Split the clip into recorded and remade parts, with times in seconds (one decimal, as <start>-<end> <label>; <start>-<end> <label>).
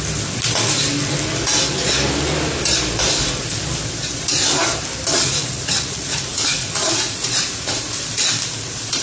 0.0-5.1 recorded; 5.1-7.9 remade; 7.9-9.0 recorded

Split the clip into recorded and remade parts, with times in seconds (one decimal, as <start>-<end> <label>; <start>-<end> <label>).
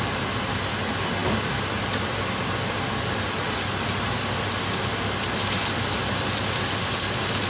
0.0-7.5 recorded